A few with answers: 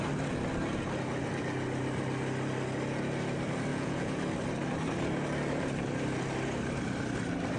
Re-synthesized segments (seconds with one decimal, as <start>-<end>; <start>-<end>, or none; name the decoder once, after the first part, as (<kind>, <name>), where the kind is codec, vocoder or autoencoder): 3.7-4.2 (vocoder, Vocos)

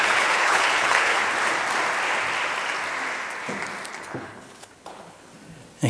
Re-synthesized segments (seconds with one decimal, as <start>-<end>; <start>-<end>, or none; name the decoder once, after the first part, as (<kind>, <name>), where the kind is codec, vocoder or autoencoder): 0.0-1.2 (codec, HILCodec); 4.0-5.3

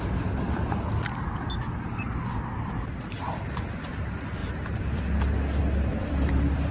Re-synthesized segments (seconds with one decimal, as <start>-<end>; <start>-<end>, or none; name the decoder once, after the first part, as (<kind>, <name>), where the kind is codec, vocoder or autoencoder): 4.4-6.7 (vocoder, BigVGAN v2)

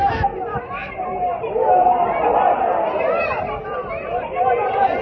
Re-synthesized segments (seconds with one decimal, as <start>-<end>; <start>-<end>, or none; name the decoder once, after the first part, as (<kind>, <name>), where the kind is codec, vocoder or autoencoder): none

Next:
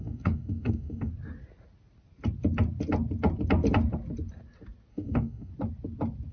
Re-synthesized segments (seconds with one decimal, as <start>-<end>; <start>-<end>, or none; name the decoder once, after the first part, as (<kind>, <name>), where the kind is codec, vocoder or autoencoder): 0.0-1.1 (codec, DAC); 4.9-5.5

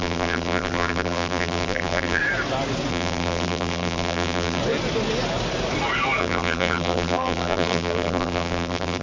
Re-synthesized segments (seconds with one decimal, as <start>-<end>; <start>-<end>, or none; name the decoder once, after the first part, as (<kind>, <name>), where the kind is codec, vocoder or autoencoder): 0.0-2.2 (vocoder, BigVGAN v2); 2.9-4.6; 6.2-9.0